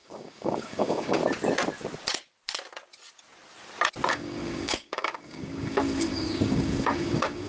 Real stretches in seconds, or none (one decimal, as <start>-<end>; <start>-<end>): 1.2-4.1